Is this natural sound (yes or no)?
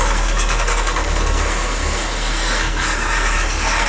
no